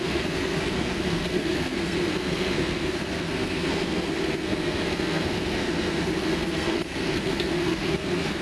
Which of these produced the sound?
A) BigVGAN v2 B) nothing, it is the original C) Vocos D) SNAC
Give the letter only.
D